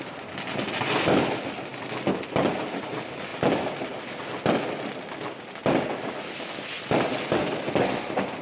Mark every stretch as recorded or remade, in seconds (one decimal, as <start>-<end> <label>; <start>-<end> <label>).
0.0-8.4 recorded